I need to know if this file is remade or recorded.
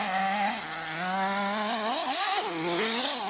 recorded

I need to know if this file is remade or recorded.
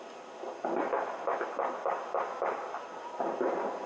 recorded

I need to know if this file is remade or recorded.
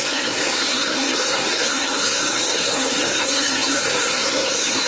remade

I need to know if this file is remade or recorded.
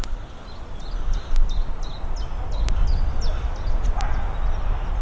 recorded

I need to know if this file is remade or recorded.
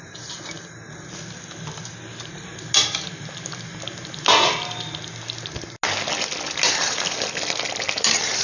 recorded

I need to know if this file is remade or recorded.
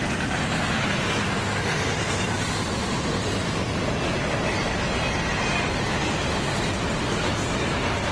recorded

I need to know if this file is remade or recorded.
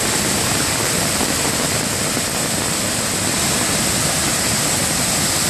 recorded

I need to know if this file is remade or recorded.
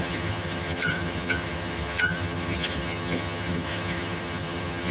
remade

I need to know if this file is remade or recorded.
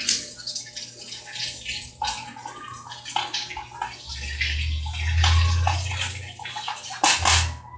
recorded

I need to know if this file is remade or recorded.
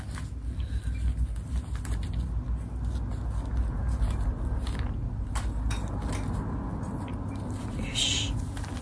recorded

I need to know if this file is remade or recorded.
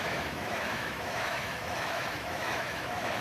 remade